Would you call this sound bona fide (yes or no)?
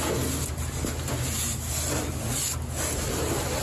yes